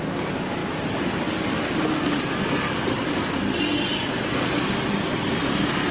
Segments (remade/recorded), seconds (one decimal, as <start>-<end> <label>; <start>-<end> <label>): 0.0-5.9 recorded